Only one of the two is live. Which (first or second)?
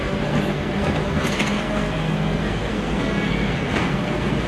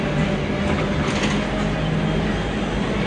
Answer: second